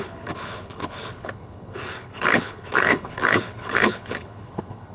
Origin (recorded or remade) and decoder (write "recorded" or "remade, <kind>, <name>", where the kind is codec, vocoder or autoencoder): remade, codec, HILCodec